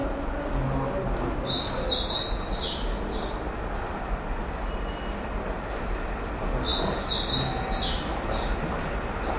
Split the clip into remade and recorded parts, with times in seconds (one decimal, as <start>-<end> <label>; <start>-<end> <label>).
0.0-9.4 recorded